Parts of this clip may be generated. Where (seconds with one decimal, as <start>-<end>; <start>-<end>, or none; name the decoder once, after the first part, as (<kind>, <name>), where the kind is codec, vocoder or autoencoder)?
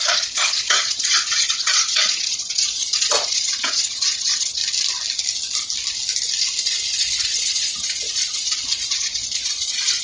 0.0-4.6 (vocoder, Vocos); 6.6-10.0